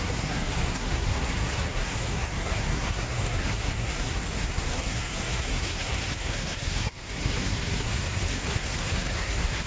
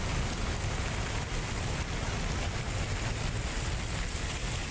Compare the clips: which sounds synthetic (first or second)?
first